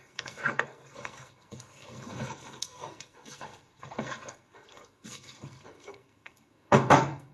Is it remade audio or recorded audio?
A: remade